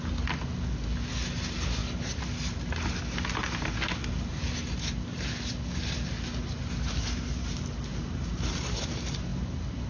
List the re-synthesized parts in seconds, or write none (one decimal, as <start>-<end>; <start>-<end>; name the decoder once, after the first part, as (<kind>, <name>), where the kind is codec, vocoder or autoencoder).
none